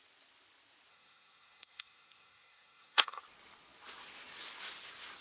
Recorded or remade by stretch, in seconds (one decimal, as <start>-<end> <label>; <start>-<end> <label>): 0.0-0.9 recorded; 0.9-3.2 remade; 3.2-5.2 recorded